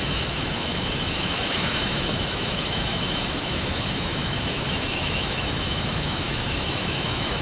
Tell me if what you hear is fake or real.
fake